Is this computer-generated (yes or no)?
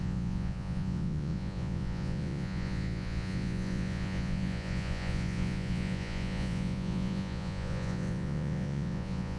yes